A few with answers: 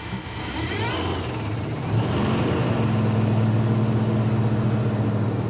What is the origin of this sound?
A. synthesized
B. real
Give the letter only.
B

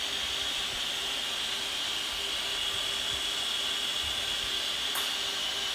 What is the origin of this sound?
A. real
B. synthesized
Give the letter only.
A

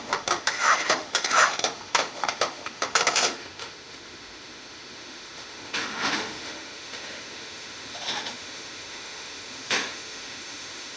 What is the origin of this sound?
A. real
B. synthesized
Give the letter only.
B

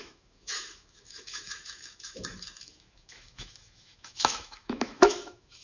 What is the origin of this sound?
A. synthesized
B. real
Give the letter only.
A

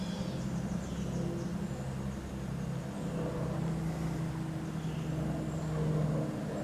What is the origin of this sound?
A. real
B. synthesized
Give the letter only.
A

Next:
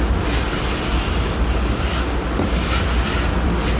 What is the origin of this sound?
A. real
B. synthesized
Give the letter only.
A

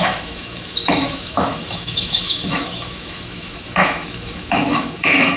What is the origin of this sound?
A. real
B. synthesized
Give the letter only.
B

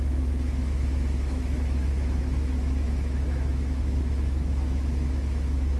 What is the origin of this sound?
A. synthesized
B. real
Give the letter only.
A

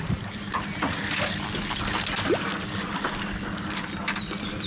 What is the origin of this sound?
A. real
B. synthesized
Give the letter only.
A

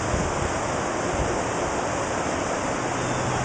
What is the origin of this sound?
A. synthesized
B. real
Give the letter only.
B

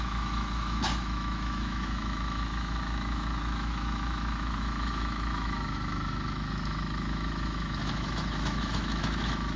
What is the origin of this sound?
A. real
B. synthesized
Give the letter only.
B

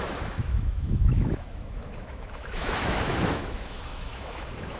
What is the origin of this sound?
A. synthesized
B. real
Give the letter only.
A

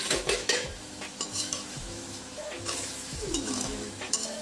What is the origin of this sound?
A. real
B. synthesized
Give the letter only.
B